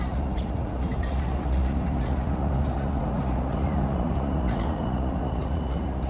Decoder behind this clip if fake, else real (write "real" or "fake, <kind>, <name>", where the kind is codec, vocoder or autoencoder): fake, vocoder, Vocos